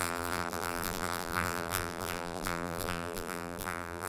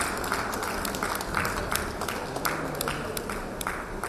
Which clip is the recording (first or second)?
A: second